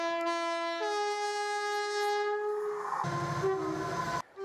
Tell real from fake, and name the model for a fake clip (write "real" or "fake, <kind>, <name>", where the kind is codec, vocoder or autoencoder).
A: real